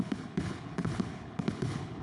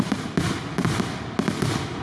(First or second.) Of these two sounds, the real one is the second